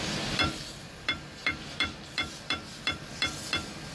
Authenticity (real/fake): fake